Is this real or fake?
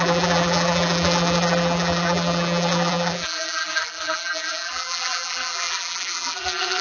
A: fake